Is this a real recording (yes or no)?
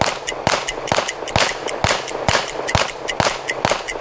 yes